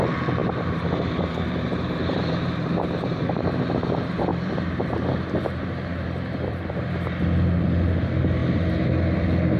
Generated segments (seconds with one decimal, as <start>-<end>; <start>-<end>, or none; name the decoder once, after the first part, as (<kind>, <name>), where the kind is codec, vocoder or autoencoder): 0.4-3.6 (vocoder, BigVGAN v2); 4.3-6.9